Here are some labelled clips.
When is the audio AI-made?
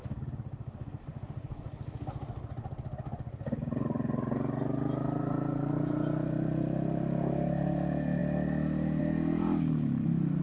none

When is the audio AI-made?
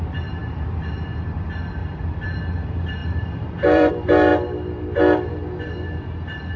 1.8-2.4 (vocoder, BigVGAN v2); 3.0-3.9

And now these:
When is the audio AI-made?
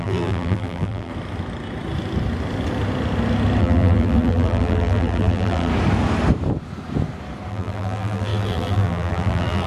0.0-1.1 (vocoder, BigVGAN v2); 3.6-5.7; 7.5-9.7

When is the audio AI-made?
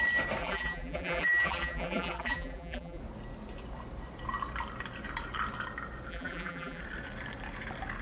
0.4-3.0 (vocoder, BigVGAN v2); 6.1-6.8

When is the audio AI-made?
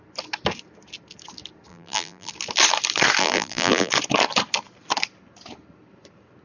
1.7-2.3 (vocoder, BigVGAN v2); 3.2-3.9